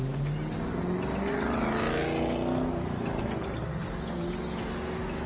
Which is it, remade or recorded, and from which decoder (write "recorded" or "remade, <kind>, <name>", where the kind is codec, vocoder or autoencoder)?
recorded